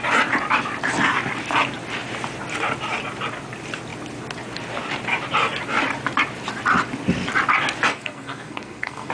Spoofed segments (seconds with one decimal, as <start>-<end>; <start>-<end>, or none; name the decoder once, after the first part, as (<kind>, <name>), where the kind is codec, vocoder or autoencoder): 7.9-9.1 (codec, SNAC)